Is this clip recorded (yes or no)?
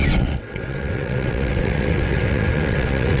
no